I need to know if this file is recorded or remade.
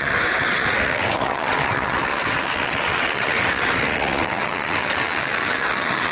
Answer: remade